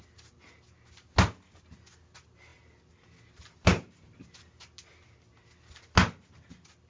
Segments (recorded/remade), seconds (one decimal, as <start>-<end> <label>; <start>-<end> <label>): 0.0-2.5 recorded; 2.5-4.5 remade; 4.5-6.9 recorded